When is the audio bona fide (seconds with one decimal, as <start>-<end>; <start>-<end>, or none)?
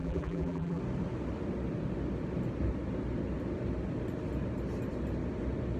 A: 0.8-5.8